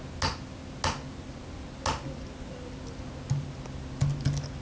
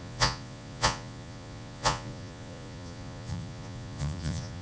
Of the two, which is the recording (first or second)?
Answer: first